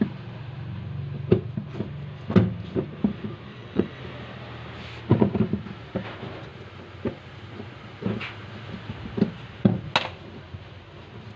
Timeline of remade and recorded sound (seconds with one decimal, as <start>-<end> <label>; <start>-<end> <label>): 0.0-3.5 recorded; 3.5-4.0 remade; 4.0-11.4 recorded